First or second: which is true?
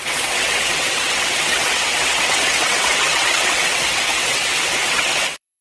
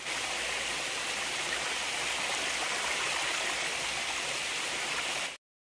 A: second